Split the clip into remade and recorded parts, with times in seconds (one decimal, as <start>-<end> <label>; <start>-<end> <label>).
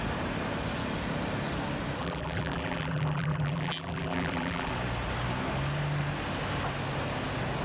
0.0-2.0 recorded; 2.0-4.7 remade; 4.7-7.6 recorded